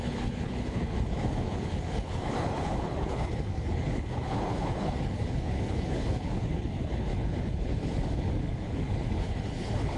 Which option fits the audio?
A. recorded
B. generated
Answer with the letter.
B